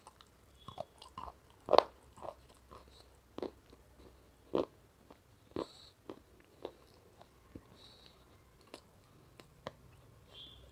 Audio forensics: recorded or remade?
recorded